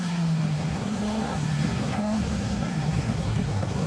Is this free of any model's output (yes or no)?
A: no